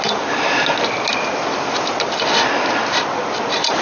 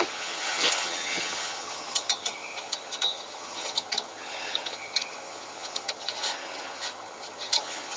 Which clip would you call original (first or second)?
first